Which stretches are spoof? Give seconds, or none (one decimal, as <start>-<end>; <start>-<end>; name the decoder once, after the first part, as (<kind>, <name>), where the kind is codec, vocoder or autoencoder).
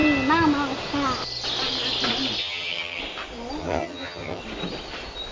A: 2.4-3.0 (vocoder, HiFi-GAN); 3.6-4.4